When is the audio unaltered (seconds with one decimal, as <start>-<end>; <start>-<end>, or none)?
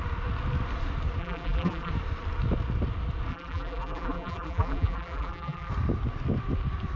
0.0-1.2; 1.9-3.3; 5.7-7.0